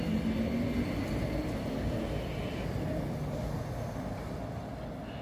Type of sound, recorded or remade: recorded